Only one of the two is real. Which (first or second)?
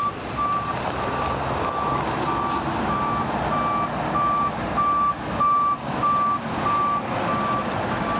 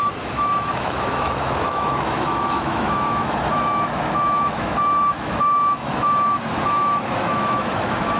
first